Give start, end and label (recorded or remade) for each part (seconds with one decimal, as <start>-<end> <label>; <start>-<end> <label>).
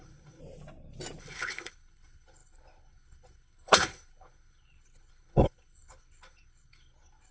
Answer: 0.0-0.4 remade; 0.4-1.2 recorded; 1.2-7.3 remade